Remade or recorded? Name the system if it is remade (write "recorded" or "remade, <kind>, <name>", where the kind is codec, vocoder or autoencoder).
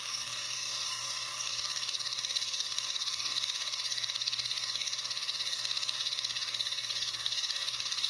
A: remade, codec, DAC